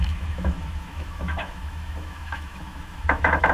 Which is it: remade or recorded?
remade